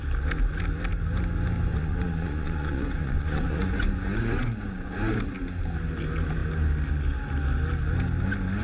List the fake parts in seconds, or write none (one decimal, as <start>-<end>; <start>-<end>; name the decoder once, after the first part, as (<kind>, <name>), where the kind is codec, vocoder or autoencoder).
1.7-4.9 (vocoder, Vocos)